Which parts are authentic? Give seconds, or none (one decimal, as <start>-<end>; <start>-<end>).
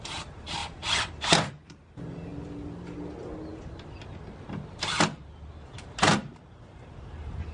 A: 2.3-6.3